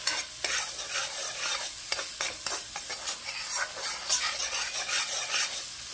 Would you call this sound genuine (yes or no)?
yes